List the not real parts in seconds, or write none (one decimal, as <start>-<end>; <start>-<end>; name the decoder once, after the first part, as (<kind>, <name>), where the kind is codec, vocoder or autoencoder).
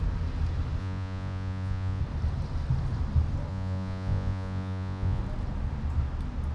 0.8-2.0 (vocoder, Vocos); 3.5-5.2